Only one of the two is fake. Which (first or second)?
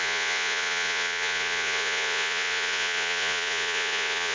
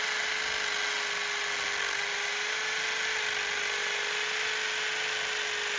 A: first